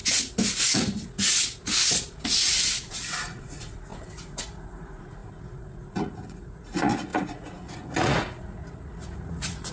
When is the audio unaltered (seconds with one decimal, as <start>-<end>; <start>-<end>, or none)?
0.0-2.5